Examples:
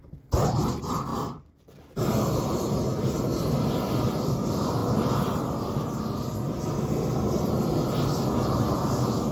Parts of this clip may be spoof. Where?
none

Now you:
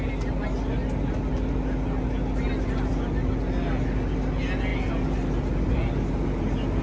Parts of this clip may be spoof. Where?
none

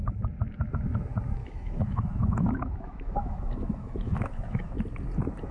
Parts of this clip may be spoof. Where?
1.4-4.7 (autoencoder, DAC-VAE)

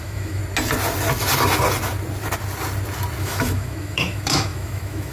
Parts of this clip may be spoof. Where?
0.0-0.4 (autoencoder, DAC-VAE); 3.2-5.1

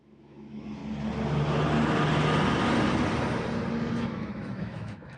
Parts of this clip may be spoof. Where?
0.0-0.8 (autoencoder, DAC-VAE); 3.9-5.2